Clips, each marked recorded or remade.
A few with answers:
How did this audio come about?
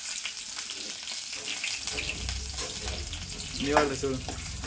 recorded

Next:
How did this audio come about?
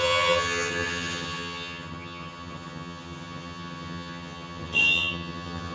remade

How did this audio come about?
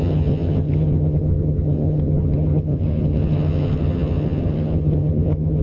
remade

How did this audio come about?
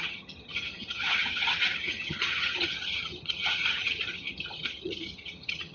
remade